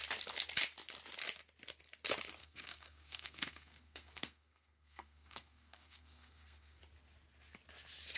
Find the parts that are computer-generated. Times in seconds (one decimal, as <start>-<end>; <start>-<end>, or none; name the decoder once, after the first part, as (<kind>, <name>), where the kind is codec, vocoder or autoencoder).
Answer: 2.4-6.8 (codec, SNAC)